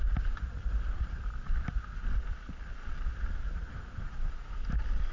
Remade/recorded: recorded